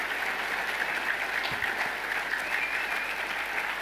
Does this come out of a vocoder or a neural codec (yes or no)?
no